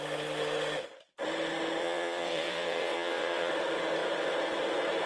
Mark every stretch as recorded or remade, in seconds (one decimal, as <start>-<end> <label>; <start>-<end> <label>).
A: 0.0-1.8 recorded; 1.8-3.5 remade; 3.5-5.1 recorded